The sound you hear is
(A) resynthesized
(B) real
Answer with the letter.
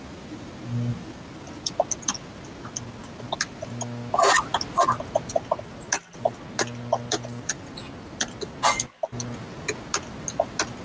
B